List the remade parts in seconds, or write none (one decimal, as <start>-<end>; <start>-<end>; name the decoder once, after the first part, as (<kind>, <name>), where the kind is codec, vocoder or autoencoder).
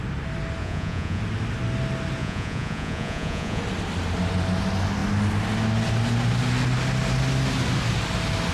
0.6-1.2 (vocoder, Vocos); 2.2-3.6